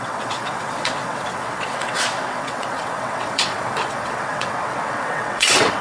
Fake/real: fake